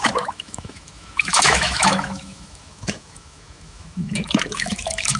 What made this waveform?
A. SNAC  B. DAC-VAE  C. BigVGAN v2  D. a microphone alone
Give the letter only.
B